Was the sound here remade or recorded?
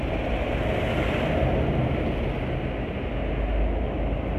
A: recorded